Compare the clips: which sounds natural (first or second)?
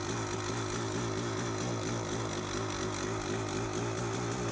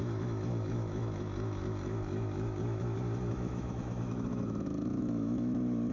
first